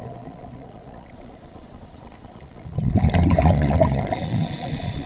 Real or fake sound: fake